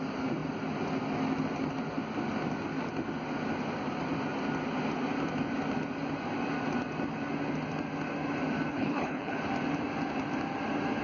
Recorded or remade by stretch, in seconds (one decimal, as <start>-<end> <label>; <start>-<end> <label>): 0.0-8.7 recorded; 8.7-9.4 remade; 9.4-11.0 recorded